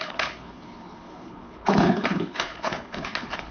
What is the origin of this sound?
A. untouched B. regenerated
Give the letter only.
B